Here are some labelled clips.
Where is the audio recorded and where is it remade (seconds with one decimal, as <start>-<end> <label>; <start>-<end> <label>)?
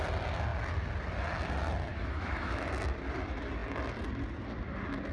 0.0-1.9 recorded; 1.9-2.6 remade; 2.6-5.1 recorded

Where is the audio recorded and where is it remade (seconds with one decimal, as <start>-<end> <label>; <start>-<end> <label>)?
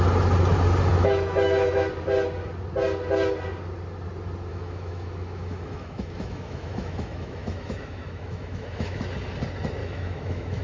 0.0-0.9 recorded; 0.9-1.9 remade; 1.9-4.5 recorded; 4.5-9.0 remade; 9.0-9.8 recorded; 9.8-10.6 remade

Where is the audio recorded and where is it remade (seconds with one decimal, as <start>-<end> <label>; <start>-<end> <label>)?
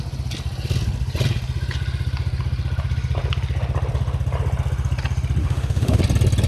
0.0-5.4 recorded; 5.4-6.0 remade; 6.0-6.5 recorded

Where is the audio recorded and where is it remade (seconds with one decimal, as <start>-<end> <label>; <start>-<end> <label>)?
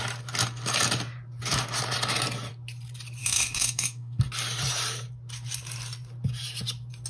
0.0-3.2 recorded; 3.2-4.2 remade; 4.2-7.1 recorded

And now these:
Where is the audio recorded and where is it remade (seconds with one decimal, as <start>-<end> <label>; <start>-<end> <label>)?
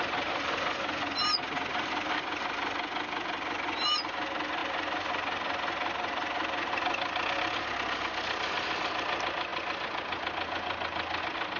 0.0-11.6 recorded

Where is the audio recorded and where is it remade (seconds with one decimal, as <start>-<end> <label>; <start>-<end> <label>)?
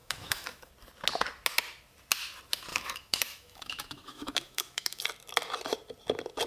0.0-0.7 remade; 0.7-2.7 recorded; 2.7-5.0 remade; 5.0-6.5 recorded